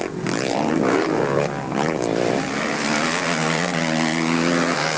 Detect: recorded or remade recorded